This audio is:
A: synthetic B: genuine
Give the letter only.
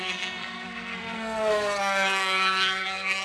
A